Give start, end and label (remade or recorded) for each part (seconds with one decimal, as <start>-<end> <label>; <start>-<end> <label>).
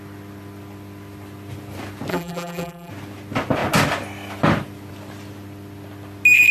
0.0-2.1 recorded; 2.1-2.9 remade; 2.9-6.5 recorded